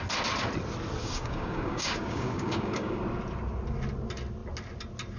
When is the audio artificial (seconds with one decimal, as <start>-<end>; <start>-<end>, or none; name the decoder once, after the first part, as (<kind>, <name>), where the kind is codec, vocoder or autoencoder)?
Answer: 1.0-3.0 (codec, DAC)